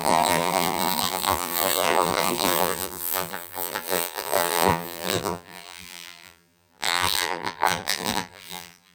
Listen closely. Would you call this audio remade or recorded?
remade